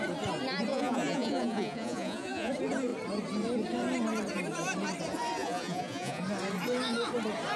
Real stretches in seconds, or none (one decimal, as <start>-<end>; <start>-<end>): 0.0-0.7; 2.5-5.4; 6.2-7.6